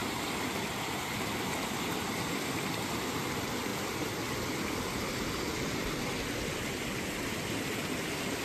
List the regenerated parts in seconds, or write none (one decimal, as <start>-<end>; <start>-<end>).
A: none